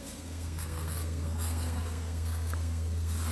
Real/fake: fake